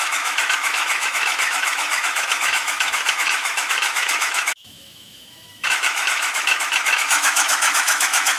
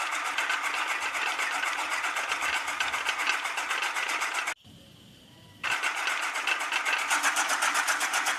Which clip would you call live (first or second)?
second